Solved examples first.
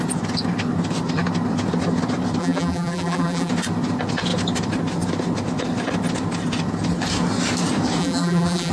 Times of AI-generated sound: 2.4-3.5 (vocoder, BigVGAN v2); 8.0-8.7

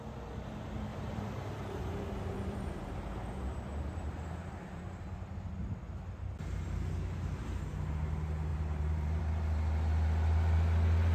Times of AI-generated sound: 0.9-4.8 (vocoder, BigVGAN v2); 8.5-9.2

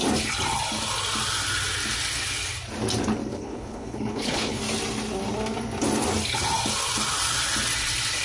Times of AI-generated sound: 3.3-4.6 (codec, HILCodec)

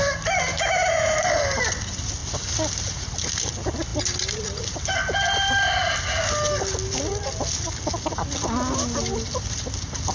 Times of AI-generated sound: 0.5-1.2 (autoencoder, DAC-VAE)

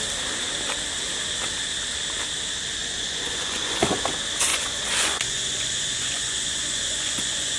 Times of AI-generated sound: 2.8-4.0 (vocoder, Vocos); 4.5-7.6

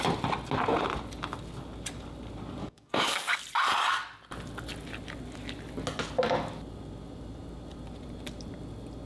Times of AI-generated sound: 2.6-3.4 (codec, DAC)